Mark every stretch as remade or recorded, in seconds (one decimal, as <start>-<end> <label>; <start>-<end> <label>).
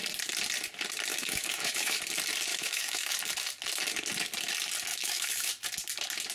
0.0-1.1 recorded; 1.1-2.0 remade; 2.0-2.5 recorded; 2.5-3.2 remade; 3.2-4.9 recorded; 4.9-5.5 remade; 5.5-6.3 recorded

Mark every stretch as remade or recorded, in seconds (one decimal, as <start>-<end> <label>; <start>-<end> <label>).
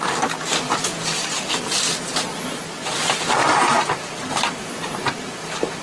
0.0-5.8 remade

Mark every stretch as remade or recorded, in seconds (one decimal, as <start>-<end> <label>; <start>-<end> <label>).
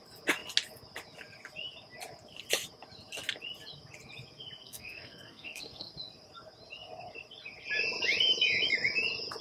0.0-4.6 recorded; 4.6-5.9 remade; 5.9-9.4 recorded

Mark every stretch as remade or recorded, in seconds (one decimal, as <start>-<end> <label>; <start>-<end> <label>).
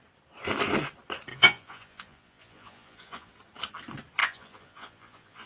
0.0-1.3 recorded; 1.3-3.3 remade; 3.3-4.2 recorded; 4.2-5.5 remade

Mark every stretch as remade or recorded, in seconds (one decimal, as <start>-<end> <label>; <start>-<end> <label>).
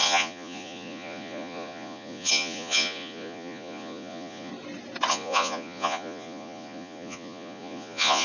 0.0-4.5 remade; 4.5-5.1 recorded; 5.1-8.2 remade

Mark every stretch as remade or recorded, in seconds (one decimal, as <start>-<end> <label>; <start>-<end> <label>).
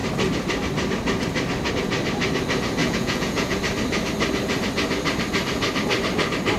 0.0-2.8 recorded; 2.8-3.6 remade; 3.6-6.6 recorded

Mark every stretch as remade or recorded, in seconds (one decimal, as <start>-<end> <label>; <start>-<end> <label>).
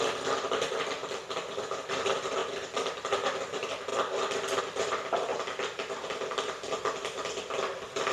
0.0-2.4 recorded; 2.4-2.9 remade; 2.9-5.3 recorded; 5.3-6.7 remade; 6.7-8.1 recorded